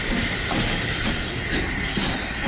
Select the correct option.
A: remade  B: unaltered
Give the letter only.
B